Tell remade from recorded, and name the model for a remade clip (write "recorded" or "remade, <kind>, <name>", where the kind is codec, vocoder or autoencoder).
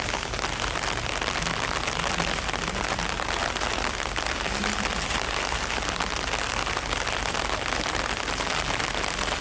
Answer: recorded